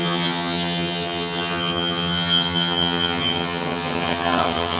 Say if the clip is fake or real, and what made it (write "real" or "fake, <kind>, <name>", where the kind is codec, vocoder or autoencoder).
fake, vocoder, HiFi-GAN